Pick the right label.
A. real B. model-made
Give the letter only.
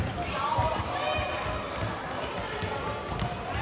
A